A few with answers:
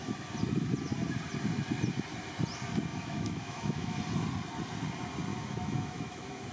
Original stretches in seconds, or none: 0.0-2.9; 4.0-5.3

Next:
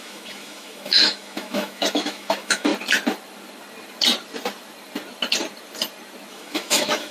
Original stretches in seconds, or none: 2.7-6.3

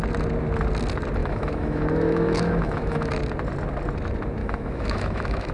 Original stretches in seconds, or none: 0.0-1.2; 3.1-4.4

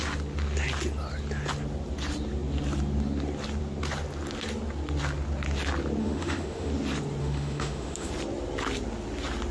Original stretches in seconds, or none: 0.0-6.0; 6.7-7.2; 8.1-9.5

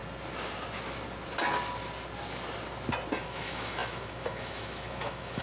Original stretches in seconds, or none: 0.0-3.2

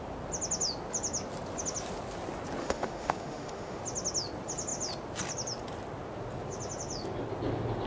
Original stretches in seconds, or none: 0.0-2.6; 3.8-7.9

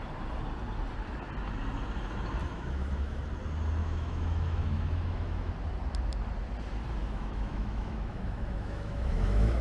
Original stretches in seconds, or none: 0.0-2.4; 3.2-3.8; 5.5-7.0

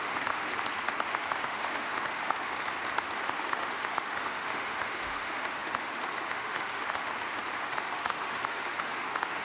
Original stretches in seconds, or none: 0.5-1.1; 2.5-3.2; 7.1-7.6